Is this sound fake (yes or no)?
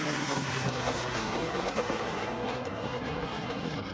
yes